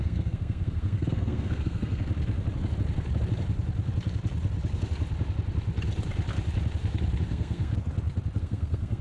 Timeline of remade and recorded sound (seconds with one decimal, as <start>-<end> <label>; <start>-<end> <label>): 0.0-2.1 remade; 2.1-7.3 recorded; 7.3-7.7 remade; 7.7-8.4 recorded; 8.4-9.0 remade

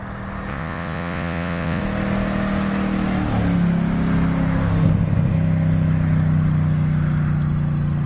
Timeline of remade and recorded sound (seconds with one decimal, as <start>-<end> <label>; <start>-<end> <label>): 0.0-0.5 recorded; 0.5-1.8 remade; 1.8-8.1 recorded

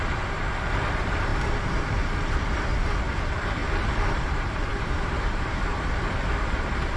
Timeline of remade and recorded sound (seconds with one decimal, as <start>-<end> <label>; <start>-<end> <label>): 0.0-3.6 remade; 3.6-4.1 recorded; 4.1-7.0 remade

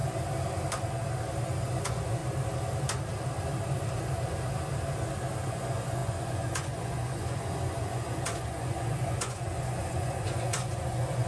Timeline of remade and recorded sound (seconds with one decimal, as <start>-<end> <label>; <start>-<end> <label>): 0.0-1.8 recorded; 1.8-2.2 remade; 2.2-5.4 recorded; 5.4-11.3 remade

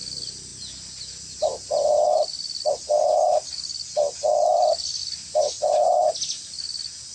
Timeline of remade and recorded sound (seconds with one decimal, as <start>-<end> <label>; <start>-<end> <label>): 0.0-7.1 recorded

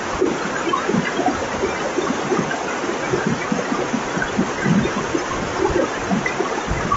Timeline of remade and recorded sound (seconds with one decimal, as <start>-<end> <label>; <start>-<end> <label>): 0.0-1.4 recorded; 1.4-4.1 remade; 4.1-7.0 recorded